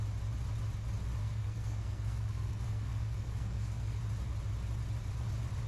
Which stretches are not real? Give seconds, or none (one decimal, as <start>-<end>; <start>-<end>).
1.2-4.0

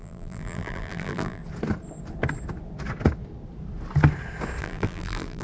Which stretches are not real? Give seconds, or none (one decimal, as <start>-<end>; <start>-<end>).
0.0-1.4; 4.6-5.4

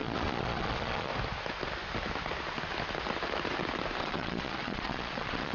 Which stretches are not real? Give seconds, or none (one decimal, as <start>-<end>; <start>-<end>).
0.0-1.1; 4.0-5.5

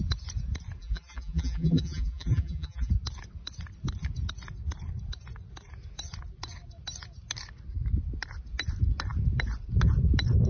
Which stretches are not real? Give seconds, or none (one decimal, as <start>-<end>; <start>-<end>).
0.8-2.9

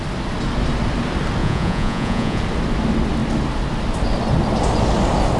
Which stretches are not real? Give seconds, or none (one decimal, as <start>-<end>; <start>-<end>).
1.4-2.4

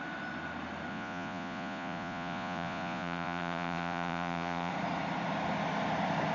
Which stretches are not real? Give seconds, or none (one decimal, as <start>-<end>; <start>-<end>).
0.9-4.7